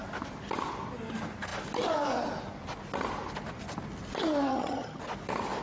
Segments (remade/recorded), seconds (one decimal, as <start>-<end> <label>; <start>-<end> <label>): 0.0-4.5 recorded; 4.5-5.0 remade; 5.0-5.6 recorded